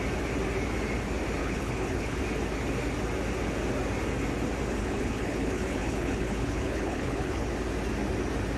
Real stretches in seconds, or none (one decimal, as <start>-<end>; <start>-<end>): 0.0-1.4; 2.2-4.8; 7.5-8.6